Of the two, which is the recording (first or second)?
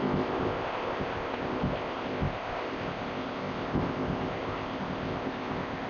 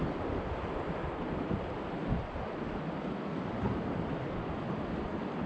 second